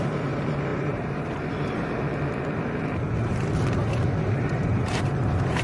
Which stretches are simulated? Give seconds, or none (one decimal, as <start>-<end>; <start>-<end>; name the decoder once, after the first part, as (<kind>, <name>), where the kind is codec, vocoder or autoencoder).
0.0-2.1 (vocoder, BigVGAN v2); 3.0-5.6